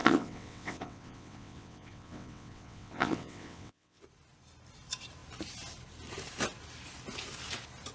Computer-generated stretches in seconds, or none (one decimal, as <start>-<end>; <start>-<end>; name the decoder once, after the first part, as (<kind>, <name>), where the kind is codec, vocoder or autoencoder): 0.0-4.0 (vocoder, WaveNeXt)